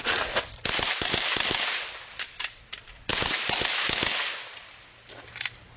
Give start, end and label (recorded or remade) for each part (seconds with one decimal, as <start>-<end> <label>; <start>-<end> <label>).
0.0-5.8 recorded